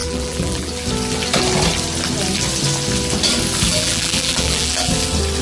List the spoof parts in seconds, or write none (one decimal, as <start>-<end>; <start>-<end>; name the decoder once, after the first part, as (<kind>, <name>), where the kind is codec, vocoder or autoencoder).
0.0-0.7 (vocoder, BigVGAN v2); 3.7-4.9